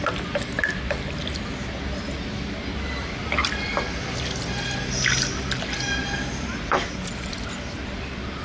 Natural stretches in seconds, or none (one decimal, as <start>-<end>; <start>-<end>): 0.0-8.4